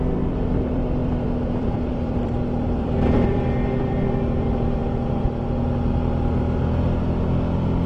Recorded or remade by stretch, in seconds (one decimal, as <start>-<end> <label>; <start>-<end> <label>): 0.0-4.8 remade; 4.8-7.9 recorded